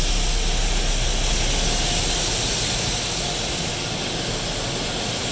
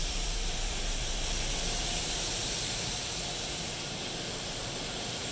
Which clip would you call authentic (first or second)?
first